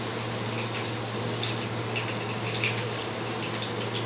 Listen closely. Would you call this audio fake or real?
real